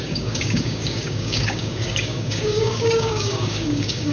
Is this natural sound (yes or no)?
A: no